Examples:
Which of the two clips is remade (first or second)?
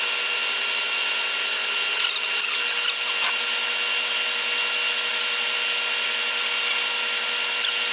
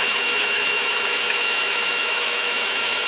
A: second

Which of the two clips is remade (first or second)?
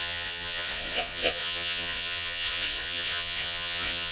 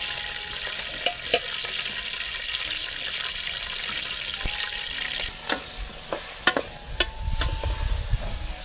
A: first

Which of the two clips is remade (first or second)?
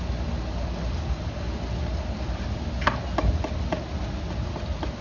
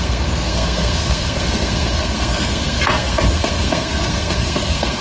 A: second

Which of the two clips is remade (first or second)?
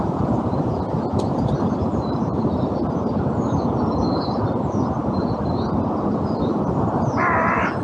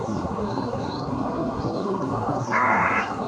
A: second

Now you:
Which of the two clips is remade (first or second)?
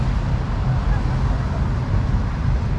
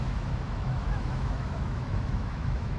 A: second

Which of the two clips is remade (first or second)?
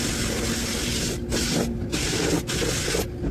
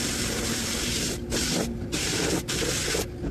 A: second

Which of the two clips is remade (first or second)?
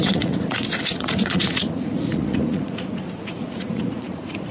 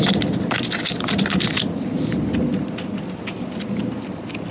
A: first